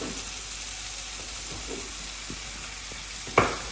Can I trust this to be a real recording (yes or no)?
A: yes